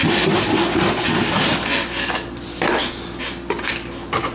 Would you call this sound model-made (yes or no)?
no